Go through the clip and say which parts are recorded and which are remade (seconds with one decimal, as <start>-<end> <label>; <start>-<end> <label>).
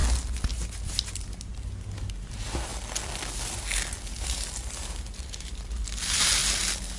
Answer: 0.0-1.2 recorded; 1.2-2.7 remade; 2.7-4.2 recorded; 4.2-6.4 remade; 6.4-7.0 recorded